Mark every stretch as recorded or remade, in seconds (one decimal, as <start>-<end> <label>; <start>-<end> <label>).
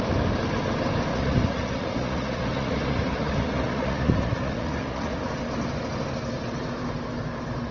0.0-1.1 recorded; 1.1-5.3 remade; 5.3-7.7 recorded